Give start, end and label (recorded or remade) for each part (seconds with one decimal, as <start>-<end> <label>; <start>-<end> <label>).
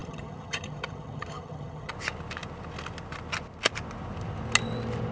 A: 0.0-1.9 remade; 1.9-5.1 recorded